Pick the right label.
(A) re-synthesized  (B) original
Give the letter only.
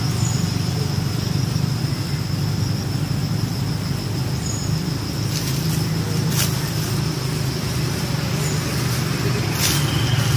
A